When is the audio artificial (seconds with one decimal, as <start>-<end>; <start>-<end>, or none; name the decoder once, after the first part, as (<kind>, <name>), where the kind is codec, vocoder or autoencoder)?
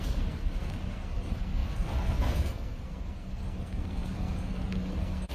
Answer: 0.0-5.3 (codec, SNAC)